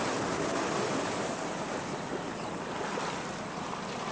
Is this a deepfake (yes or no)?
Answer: no